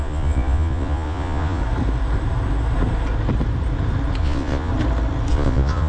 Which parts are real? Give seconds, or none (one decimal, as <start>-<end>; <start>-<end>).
1.6-4.2; 4.7-5.3